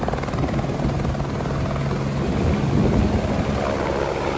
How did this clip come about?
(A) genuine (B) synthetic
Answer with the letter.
A